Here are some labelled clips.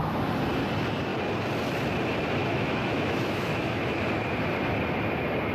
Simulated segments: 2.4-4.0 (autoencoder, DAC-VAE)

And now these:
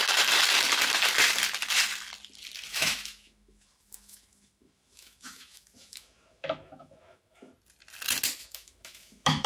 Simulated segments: 2.7-7.5 (autoencoder, DAC-VAE); 8.4-9.5

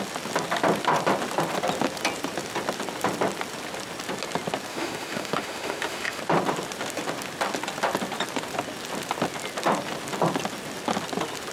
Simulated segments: 4.7-6.2 (autoencoder, DAC-VAE)

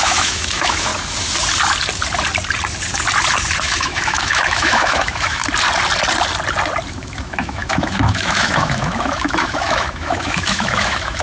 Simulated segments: 0.0-0.9 (autoencoder, DAC-VAE); 3.6-5.4; 6.9-11.2

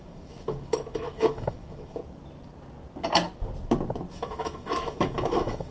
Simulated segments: 0.0-2.0 (autoencoder, DAC-VAE); 4.1-5.7

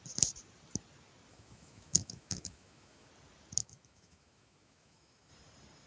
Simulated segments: 1.3-3.1 (autoencoder, DAC-VAE); 3.6-5.3

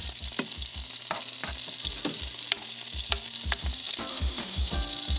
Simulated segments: 4.1-4.7 (autoencoder, DAC-VAE)